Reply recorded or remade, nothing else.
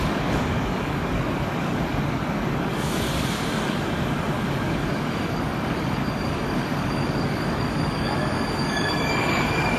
remade